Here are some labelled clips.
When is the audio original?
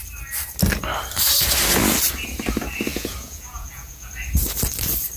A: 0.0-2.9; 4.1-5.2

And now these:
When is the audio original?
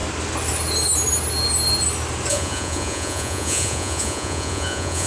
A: 0.0-2.3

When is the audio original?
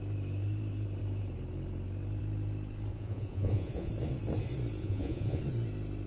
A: 0.0-2.9; 3.9-4.8; 5.4-6.1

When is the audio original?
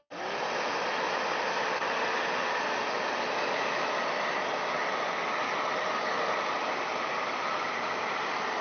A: 0.0-8.6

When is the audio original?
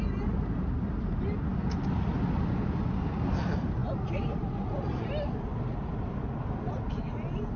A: 0.0-7.6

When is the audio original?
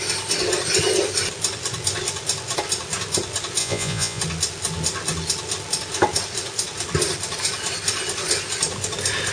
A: 0.0-3.6; 4.2-9.3